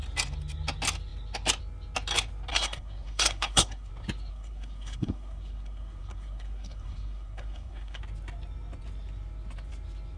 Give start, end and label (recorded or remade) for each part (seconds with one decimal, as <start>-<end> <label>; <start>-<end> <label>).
0.0-2.5 recorded; 2.5-3.9 remade; 3.9-4.3 recorded; 4.3-8.0 remade; 8.0-10.2 recorded